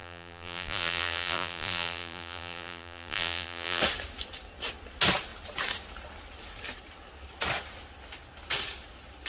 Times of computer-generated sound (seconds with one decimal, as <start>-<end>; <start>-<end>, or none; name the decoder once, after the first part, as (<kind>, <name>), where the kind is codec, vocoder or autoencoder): 0.0-3.8 (vocoder, BigVGAN v2)